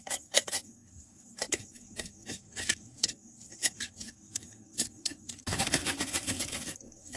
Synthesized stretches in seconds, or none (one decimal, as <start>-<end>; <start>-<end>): 0.0-7.2